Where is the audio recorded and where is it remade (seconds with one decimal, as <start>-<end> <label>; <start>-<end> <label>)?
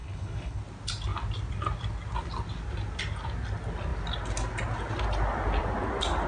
0.0-0.6 remade; 0.6-6.3 recorded